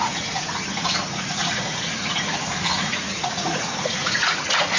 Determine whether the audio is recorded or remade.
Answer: remade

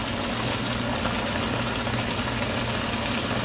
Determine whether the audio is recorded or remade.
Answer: recorded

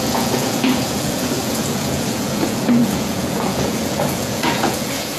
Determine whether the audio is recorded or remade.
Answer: remade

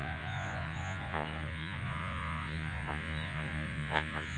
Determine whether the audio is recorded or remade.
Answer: remade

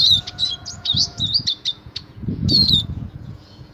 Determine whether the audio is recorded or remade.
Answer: remade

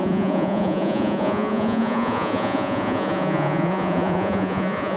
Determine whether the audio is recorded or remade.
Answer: remade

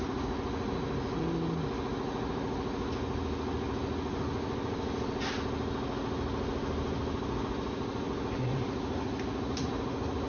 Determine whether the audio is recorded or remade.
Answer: recorded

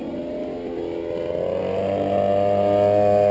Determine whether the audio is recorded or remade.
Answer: recorded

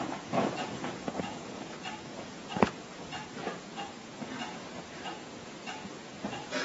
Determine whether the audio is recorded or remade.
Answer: remade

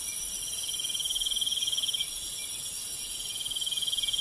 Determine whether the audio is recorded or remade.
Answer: recorded